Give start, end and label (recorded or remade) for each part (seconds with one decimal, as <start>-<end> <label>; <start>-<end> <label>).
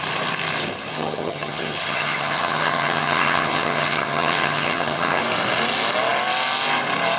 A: 0.0-0.9 recorded; 0.9-5.2 remade; 5.2-7.2 recorded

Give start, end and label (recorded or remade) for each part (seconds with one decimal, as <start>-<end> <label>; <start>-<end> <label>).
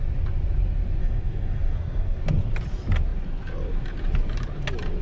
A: 0.0-1.0 recorded; 1.0-2.2 remade; 2.2-5.0 recorded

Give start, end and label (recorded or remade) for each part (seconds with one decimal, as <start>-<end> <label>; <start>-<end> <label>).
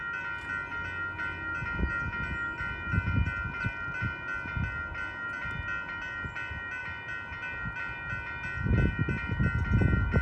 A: 0.0-10.2 recorded